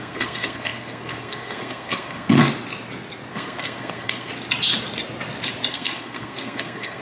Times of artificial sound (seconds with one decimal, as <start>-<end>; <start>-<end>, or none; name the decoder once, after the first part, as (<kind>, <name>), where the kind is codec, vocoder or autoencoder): 0.0-2.4 (codec, SNAC); 3.3-4.3; 5.7-7.0